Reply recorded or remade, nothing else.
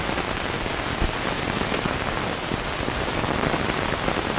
recorded